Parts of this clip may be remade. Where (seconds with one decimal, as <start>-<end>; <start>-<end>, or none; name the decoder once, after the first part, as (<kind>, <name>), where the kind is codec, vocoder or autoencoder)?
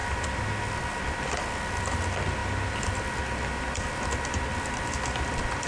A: 1.8-2.4 (vocoder, BigVGAN v2); 4.6-5.7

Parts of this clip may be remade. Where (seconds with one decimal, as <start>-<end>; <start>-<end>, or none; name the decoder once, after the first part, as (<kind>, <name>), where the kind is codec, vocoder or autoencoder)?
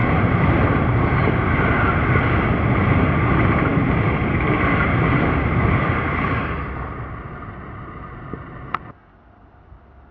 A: 5.8-8.9 (vocoder, BigVGAN v2)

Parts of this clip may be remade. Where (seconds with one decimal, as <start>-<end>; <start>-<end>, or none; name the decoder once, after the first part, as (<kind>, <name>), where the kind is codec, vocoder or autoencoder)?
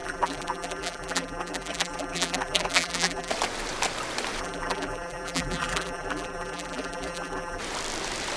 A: 0.0-3.3 (vocoder, BigVGAN v2); 4.4-7.6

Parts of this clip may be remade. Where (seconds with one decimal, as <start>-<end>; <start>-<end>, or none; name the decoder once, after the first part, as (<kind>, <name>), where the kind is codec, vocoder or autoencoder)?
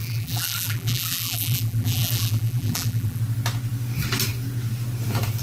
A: 0.0-3.2 (vocoder, BigVGAN v2)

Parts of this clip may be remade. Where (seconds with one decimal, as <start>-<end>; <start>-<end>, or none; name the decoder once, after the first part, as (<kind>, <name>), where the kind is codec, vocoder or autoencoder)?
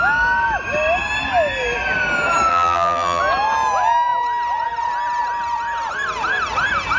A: 2.5-3.2 (vocoder, BigVGAN v2)